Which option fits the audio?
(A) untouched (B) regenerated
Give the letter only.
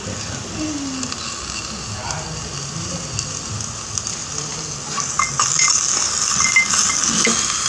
A